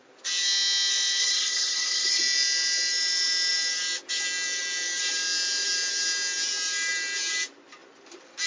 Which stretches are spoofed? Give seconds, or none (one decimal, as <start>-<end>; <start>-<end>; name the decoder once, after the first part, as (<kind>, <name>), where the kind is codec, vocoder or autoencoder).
1.2-2.2 (codec, HILCodec)

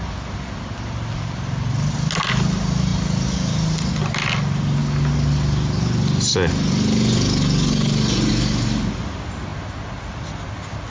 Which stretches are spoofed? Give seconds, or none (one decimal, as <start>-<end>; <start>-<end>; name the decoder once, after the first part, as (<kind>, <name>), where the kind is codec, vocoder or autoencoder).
none

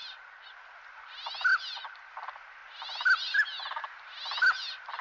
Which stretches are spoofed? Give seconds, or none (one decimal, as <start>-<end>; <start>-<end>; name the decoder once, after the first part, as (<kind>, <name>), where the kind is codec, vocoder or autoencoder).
none